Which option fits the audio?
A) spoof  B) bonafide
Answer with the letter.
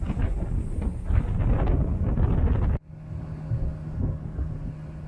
B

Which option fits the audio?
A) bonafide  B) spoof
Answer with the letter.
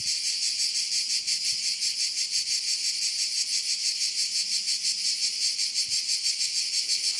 A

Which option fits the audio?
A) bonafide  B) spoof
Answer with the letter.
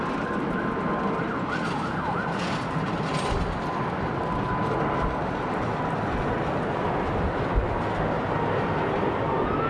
A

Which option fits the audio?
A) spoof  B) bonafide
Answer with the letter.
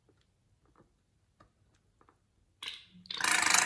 B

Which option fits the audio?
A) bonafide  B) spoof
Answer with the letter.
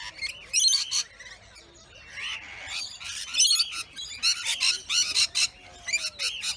A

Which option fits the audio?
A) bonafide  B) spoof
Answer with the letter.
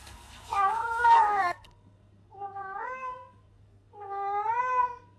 B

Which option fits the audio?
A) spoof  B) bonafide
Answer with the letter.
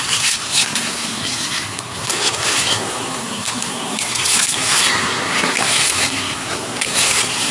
A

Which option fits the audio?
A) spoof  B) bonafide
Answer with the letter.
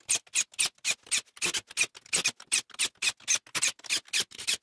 B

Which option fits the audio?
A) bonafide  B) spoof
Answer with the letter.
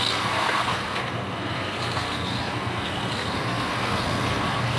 B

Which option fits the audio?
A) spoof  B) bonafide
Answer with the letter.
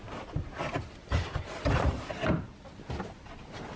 B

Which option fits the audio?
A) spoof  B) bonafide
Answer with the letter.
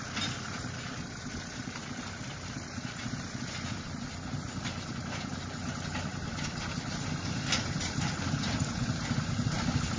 B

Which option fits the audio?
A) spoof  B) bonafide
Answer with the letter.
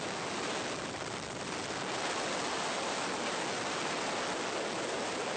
B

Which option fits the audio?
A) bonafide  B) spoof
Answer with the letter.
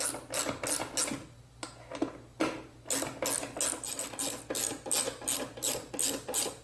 A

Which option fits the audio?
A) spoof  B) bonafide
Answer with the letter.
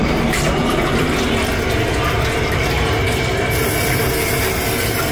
B